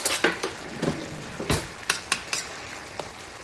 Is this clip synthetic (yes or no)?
no